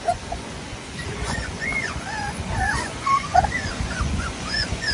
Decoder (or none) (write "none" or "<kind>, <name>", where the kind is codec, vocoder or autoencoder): vocoder, Vocos